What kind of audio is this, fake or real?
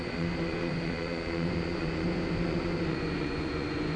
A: fake